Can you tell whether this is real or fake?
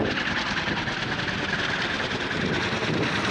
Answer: real